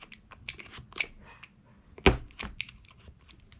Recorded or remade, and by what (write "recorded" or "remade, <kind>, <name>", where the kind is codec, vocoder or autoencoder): recorded